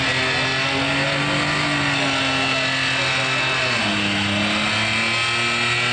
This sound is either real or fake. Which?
real